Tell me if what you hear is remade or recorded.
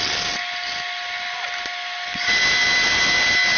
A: recorded